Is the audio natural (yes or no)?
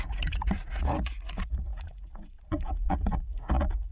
no